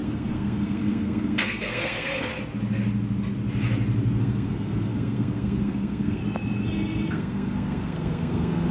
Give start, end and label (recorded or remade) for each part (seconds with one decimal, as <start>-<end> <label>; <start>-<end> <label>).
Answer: 0.0-2.3 remade; 2.3-4.2 recorded; 4.2-6.2 remade; 6.2-7.1 recorded; 7.1-8.7 remade